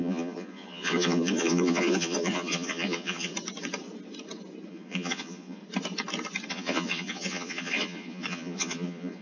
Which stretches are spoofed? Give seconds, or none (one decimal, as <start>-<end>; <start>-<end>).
0.0-3.3; 4.7-5.6; 6.5-9.2